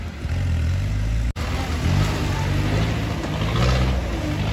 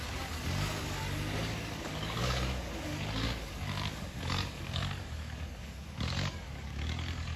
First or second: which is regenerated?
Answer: second